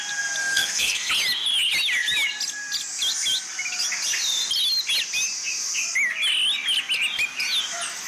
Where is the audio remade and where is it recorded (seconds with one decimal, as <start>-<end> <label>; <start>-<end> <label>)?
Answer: 0.0-0.4 recorded; 0.4-1.1 remade; 1.1-8.1 recorded